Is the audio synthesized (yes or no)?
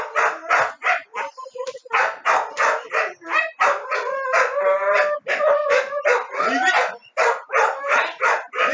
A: no